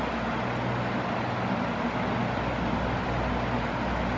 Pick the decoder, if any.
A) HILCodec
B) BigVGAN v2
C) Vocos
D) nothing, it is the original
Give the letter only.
D